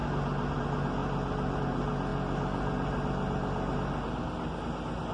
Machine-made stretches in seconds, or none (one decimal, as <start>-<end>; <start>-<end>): none